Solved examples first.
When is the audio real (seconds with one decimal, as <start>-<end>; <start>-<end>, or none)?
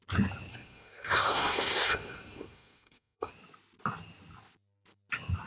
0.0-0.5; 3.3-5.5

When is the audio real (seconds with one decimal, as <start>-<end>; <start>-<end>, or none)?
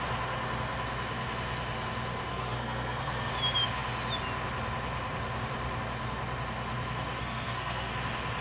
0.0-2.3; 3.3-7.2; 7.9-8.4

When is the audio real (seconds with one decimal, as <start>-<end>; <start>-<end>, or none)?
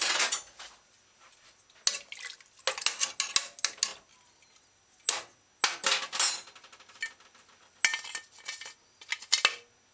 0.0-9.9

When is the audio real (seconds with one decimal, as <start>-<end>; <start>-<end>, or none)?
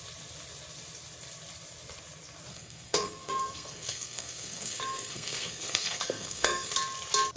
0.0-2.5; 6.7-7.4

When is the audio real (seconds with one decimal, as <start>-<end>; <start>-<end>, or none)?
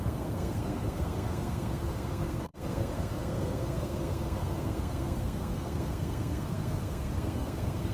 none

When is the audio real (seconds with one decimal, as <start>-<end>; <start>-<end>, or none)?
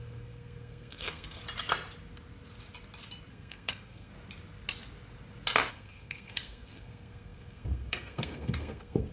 1.4-3.3; 4.1-5.7